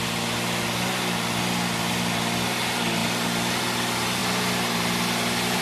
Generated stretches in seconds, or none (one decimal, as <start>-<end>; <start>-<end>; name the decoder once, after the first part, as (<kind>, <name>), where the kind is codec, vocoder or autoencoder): none